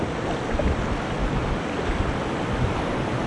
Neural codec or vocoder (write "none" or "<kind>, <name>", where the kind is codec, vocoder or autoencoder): none